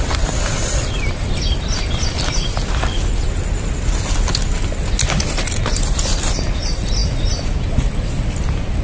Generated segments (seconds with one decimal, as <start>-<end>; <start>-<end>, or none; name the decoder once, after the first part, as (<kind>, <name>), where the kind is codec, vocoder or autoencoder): none